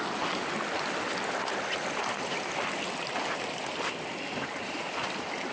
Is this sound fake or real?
real